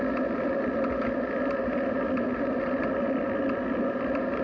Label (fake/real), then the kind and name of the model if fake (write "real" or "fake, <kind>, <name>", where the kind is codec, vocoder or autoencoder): real